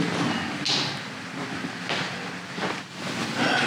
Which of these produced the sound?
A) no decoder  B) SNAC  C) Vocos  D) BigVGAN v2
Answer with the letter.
A